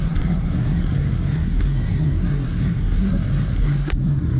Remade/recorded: remade